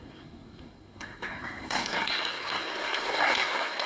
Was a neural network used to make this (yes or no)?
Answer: yes